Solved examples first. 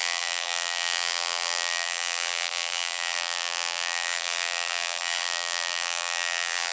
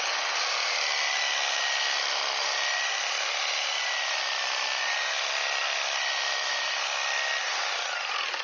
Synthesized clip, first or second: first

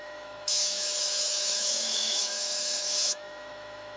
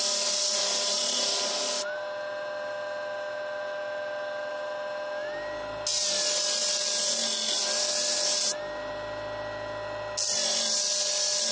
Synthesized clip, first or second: first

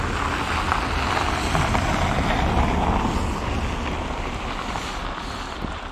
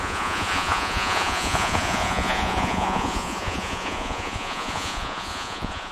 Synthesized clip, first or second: second